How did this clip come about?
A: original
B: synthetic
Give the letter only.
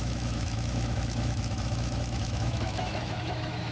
B